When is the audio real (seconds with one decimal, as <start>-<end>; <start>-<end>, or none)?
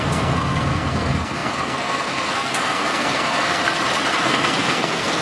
3.6-4.1